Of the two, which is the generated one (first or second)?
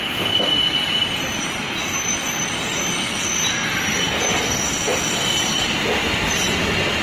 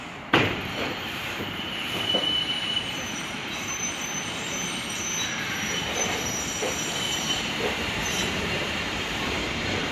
second